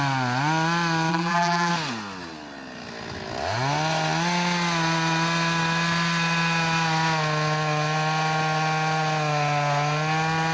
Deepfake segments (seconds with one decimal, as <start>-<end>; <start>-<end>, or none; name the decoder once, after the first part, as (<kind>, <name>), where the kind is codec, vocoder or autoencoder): 1.1-1.7 (vocoder, BigVGAN v2)

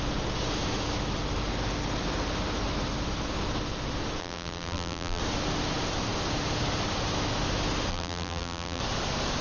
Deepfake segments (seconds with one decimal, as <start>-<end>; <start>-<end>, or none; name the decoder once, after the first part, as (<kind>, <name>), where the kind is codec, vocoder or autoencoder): 4.2-5.2 (vocoder, BigVGAN v2); 7.9-8.8

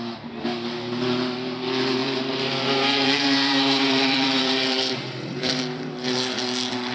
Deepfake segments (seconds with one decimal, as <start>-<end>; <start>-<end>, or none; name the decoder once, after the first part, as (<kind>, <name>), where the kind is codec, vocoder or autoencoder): 2.0-5.6 (vocoder, BigVGAN v2)